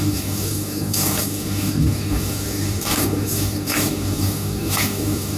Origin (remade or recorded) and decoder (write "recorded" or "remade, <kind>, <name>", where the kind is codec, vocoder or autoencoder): remade, codec, DAC